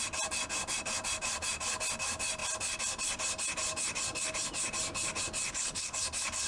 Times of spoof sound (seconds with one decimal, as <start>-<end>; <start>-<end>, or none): none